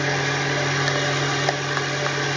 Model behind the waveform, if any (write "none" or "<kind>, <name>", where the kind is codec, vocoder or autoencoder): none